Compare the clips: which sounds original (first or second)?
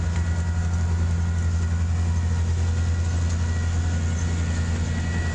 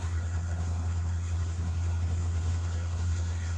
first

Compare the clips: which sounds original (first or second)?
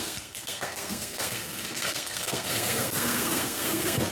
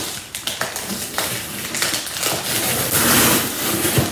second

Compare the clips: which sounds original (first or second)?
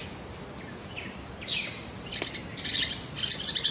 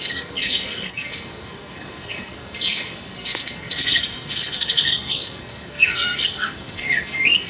first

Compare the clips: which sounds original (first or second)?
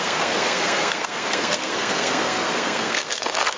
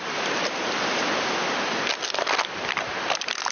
second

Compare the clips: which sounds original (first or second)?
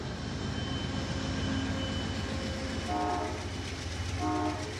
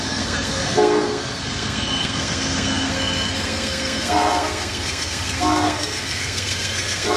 first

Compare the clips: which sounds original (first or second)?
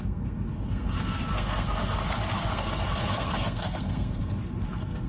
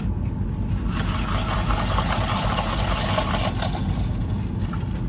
second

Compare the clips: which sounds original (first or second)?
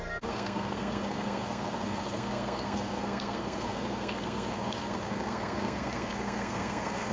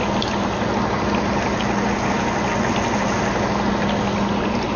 second